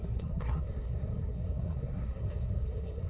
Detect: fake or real fake